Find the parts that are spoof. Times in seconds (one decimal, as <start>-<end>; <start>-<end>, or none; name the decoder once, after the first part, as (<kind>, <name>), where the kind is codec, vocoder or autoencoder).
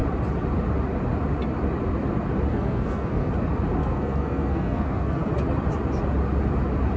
2.5-3.3 (codec, SNAC); 3.8-5.3